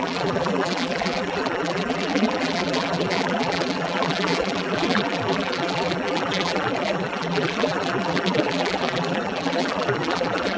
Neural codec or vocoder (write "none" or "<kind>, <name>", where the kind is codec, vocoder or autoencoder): vocoder, BigVGAN v2